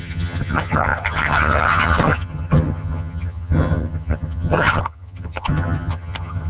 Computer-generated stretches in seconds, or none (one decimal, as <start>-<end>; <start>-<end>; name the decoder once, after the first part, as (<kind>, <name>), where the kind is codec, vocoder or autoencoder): 0.0-6.5 (vocoder, HiFi-GAN)